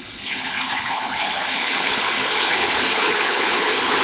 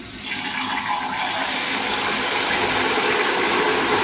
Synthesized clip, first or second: first